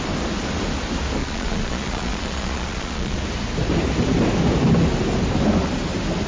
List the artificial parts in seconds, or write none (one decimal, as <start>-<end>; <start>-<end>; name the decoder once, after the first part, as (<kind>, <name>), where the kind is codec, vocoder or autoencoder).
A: 1.2-3.2 (vocoder, Vocos)